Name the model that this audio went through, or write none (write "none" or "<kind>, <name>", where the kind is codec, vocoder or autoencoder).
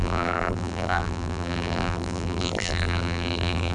vocoder, BigVGAN v2